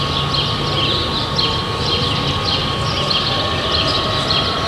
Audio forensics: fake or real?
real